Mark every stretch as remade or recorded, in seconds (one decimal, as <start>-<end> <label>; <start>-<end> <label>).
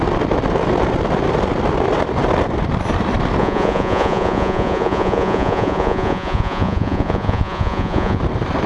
0.0-3.4 recorded; 3.4-8.2 remade; 8.2-8.7 recorded